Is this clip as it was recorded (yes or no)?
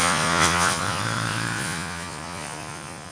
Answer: no